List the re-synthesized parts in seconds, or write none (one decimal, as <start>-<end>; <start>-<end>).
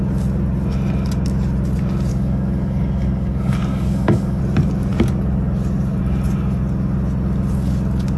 2.1-4.4